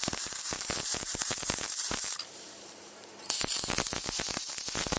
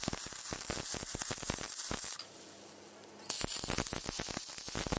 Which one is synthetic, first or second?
first